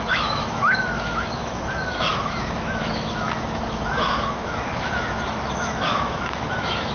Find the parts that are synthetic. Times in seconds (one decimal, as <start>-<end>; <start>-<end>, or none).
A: 0.0-6.9